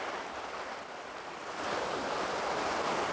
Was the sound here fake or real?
real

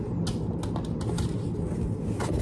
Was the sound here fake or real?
real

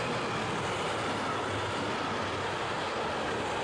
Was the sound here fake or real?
real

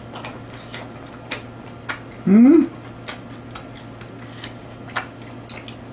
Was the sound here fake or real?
real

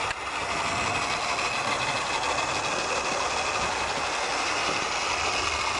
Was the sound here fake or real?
real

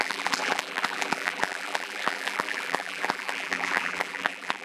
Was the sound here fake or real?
fake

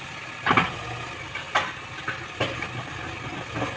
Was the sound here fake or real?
real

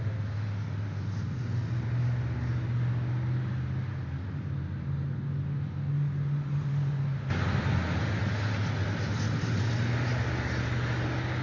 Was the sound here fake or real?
real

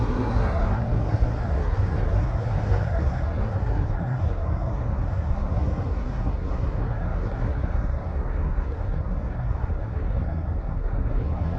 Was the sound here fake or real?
fake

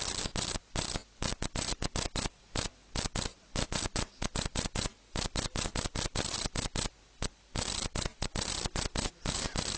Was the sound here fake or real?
real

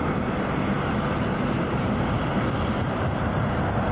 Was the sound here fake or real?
fake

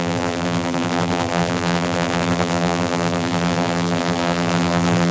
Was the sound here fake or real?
fake